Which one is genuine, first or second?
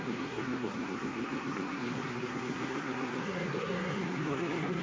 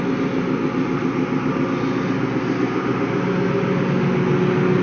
second